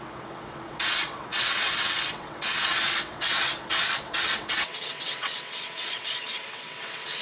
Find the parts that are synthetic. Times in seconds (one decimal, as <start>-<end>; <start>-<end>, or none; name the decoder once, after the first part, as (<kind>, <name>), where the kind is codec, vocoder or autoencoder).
0.0-7.2 (vocoder, WaveNeXt)